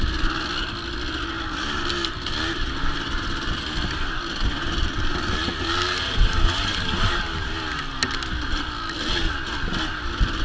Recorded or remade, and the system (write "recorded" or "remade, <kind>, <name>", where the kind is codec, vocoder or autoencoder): recorded